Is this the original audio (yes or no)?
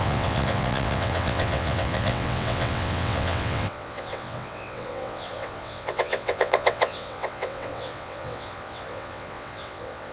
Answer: no